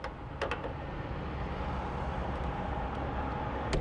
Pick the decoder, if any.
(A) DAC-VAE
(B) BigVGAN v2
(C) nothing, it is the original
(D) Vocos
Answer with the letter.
C